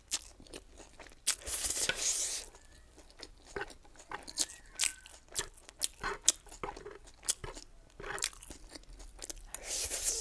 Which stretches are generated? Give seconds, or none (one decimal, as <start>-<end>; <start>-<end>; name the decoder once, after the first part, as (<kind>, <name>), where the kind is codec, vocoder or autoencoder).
none